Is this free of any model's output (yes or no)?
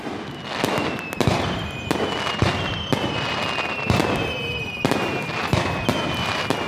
yes